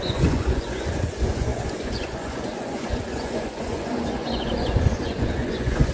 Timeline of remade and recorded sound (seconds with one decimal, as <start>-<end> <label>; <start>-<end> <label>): 0.0-5.9 remade

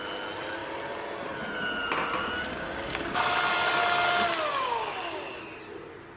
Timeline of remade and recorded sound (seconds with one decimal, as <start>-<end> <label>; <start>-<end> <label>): 0.0-2.2 recorded; 2.2-3.4 remade; 3.4-4.5 recorded; 4.5-5.4 remade; 5.4-6.2 recorded

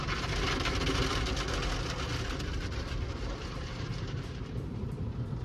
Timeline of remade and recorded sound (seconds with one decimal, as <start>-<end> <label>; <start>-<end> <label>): 0.0-3.2 recorded; 3.2-5.4 remade

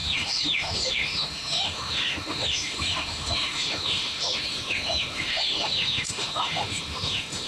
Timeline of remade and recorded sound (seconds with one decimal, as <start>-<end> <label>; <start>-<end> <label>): 0.0-7.5 remade